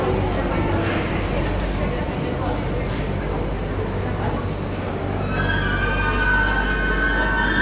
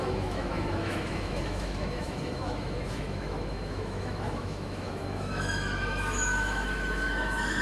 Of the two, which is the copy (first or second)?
second